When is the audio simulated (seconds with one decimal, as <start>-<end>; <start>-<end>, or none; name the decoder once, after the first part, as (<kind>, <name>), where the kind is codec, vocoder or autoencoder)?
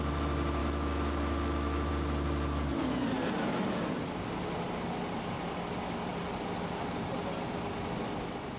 0.6-1.9 (autoencoder, DAC-VAE)